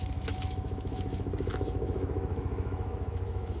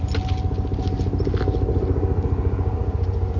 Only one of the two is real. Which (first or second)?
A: second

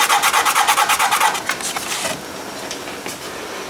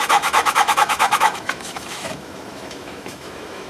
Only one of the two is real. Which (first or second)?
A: first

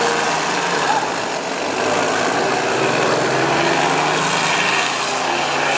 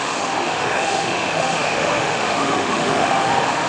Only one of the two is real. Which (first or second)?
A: first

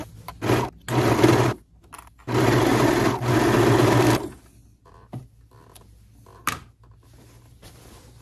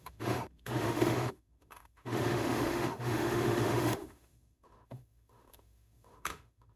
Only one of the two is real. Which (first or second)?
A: first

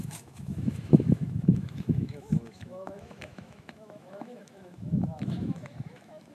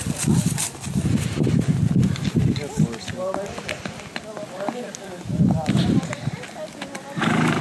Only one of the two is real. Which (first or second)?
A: second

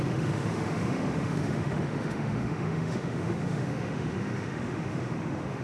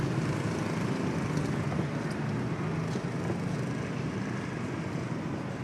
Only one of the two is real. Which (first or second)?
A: second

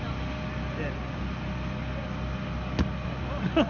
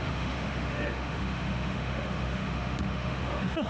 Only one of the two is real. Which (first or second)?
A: first